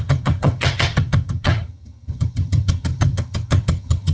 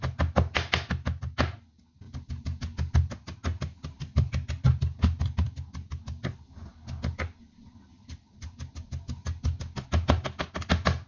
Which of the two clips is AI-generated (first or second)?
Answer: first